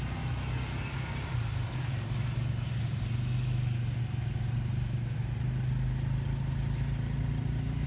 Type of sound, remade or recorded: recorded